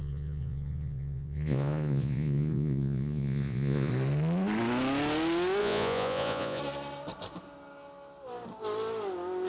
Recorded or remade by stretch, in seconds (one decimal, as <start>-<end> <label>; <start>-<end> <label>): 0.0-3.9 remade; 3.9-5.6 recorded; 5.6-6.6 remade; 6.6-9.5 recorded